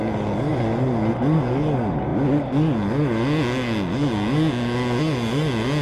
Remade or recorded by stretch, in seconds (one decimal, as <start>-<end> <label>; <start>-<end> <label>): 0.0-5.8 recorded